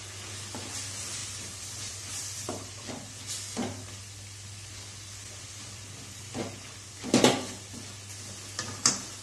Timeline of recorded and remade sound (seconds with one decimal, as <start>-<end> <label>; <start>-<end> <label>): 0.0-1.2 recorded; 1.2-3.1 remade; 3.1-5.2 recorded; 5.2-6.2 remade; 6.2-9.2 recorded